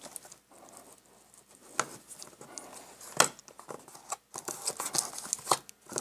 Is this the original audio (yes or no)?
yes